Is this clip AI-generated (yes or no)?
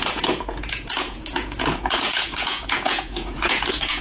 yes